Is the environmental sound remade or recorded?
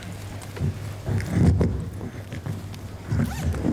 recorded